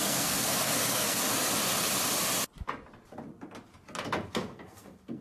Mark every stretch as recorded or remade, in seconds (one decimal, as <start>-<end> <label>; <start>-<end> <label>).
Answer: 0.0-1.2 remade; 1.2-4.3 recorded; 4.3-5.2 remade